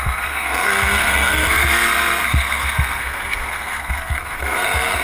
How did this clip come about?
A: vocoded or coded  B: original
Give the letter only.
A